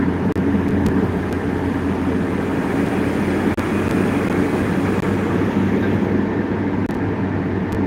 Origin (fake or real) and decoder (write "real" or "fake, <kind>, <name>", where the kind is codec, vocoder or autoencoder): real